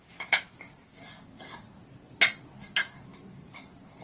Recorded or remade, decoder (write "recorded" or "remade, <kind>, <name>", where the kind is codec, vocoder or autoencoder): recorded